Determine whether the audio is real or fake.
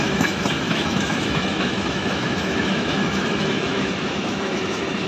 fake